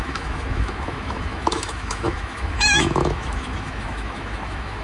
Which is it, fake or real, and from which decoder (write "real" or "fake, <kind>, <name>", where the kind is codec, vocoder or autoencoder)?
fake, autoencoder, DAC-VAE